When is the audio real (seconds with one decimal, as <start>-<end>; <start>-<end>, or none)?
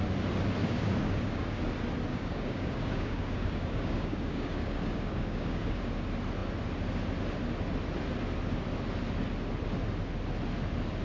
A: 0.0-0.6; 1.6-2.1; 5.8-11.0